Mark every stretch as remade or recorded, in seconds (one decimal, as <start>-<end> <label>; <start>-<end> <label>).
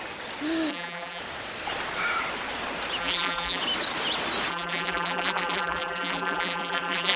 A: 0.0-0.7 recorded; 0.7-1.2 remade; 1.2-3.0 recorded; 3.0-3.6 remade; 3.6-4.5 recorded; 4.5-7.2 remade